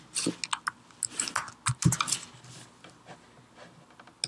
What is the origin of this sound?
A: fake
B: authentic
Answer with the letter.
B